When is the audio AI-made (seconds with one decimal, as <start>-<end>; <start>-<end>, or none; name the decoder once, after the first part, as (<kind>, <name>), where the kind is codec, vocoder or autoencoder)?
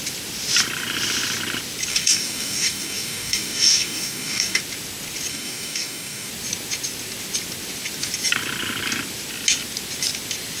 1.9-4.6 (codec, DAC); 5.3-6.3